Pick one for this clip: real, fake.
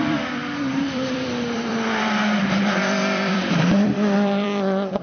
fake